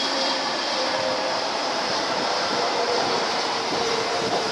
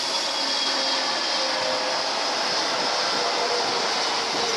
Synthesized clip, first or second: first